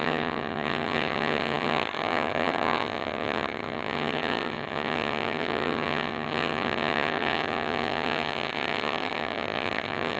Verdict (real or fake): fake